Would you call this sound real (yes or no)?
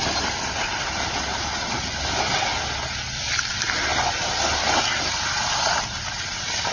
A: yes